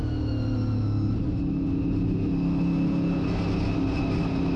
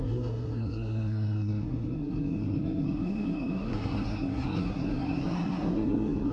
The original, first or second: first